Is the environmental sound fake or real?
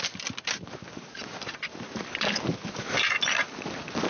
real